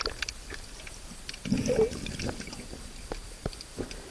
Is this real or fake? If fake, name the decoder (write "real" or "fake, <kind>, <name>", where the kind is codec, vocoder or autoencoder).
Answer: real